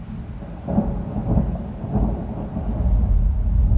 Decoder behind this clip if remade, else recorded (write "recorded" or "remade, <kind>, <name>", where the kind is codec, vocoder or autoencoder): recorded